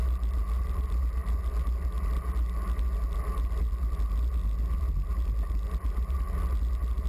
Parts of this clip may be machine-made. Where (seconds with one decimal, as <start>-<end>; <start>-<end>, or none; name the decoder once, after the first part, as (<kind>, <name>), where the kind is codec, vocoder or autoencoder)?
none